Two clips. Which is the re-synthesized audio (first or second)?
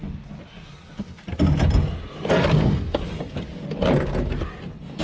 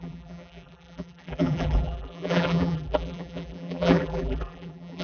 second